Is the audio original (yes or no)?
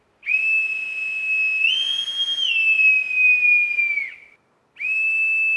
yes